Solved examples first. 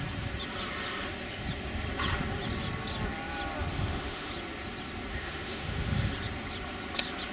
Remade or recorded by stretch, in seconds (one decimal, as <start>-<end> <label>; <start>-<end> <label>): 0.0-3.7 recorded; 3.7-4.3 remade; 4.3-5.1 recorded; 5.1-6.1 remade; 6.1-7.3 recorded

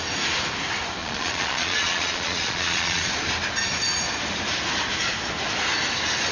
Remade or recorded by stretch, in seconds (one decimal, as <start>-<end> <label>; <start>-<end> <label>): 0.0-1.0 recorded; 1.0-3.1 remade; 3.1-6.3 recorded

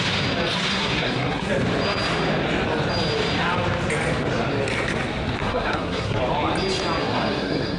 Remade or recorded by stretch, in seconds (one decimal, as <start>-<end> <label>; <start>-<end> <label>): 0.0-0.7 recorded; 0.7-1.5 remade; 1.5-5.4 recorded; 5.4-6.2 remade; 6.2-7.0 recorded; 7.0-7.8 remade

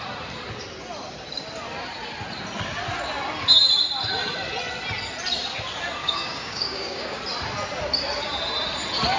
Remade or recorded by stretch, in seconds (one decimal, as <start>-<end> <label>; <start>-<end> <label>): 0.0-6.0 recorded; 6.0-7.2 remade; 7.2-9.2 recorded

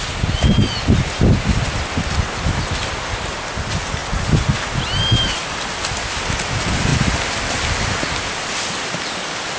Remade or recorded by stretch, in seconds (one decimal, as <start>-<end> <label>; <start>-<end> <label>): 0.0-9.6 recorded